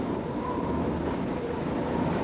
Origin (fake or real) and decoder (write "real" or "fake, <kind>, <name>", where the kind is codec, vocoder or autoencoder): real